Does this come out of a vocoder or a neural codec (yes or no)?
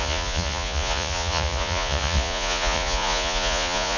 yes